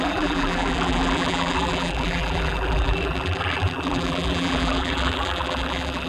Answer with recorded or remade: remade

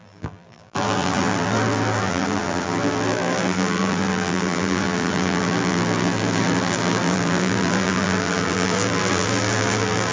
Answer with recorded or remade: remade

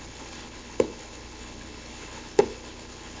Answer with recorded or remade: remade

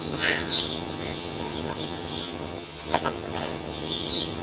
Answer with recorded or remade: remade